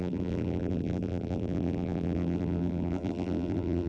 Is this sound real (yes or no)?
no